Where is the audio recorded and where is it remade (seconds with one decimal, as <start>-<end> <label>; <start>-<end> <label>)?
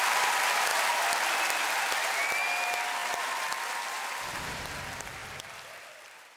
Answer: 0.0-3.0 recorded; 3.0-4.2 remade; 4.2-5.2 recorded; 5.2-6.4 remade